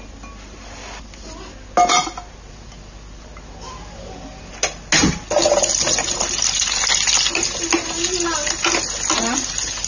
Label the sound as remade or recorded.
recorded